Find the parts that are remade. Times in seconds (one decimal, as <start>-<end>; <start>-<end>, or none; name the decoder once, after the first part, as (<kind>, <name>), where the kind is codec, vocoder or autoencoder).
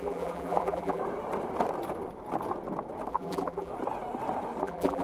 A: 0.0-1.0 (vocoder, BigVGAN v2); 3.1-3.7; 4.6-5.0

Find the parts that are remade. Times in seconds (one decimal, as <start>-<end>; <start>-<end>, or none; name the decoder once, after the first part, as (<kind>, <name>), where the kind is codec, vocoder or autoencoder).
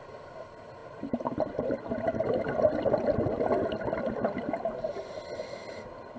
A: 0.8-2.1 (vocoder, BigVGAN v2)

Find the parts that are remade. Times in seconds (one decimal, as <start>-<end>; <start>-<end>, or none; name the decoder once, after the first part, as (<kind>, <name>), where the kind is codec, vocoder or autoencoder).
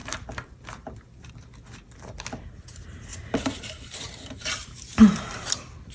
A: 0.0-1.3 (vocoder, BigVGAN v2); 3.1-5.9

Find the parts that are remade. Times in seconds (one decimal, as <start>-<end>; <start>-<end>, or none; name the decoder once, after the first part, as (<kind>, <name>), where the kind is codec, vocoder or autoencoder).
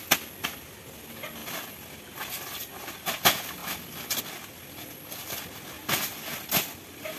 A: 1.4-3.0 (vocoder, BigVGAN v2); 5.8-7.2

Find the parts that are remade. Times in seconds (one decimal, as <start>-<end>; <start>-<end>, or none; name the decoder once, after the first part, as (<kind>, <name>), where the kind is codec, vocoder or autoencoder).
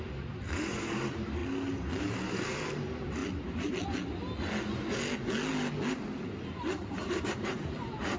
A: 0.0-1.4 (vocoder, BigVGAN v2); 2.0-3.2; 6.9-8.2